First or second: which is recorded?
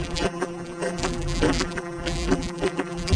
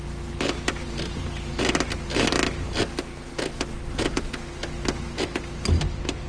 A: second